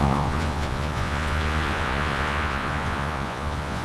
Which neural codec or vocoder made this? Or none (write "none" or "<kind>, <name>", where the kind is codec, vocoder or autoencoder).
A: vocoder, Vocos